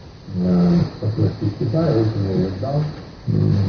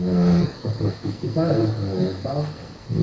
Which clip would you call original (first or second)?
first